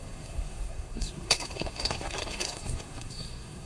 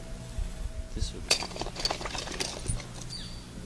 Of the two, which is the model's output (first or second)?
first